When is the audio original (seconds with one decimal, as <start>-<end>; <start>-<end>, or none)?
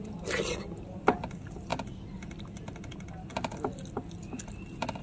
0.0-5.0